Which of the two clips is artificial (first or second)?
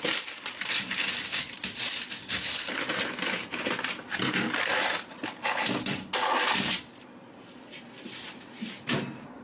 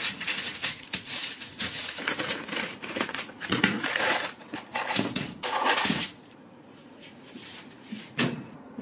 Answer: second